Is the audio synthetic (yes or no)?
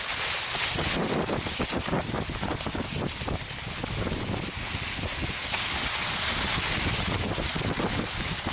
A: no